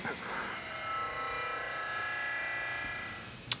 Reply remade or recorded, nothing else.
recorded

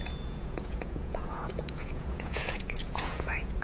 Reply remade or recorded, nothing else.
remade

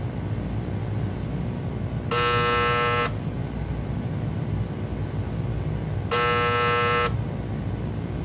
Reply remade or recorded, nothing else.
recorded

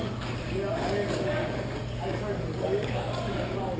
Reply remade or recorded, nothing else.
remade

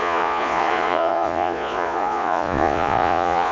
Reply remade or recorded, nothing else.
remade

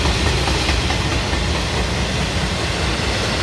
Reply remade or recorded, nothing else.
recorded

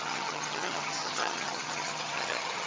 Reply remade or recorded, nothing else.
remade